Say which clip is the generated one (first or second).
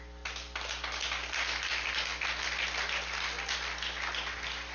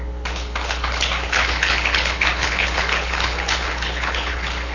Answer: second